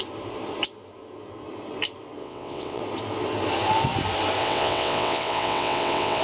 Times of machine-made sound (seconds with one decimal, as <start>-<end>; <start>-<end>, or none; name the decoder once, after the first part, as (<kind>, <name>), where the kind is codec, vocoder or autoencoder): 2.2-2.8 (vocoder, WaveNeXt); 4.4-6.2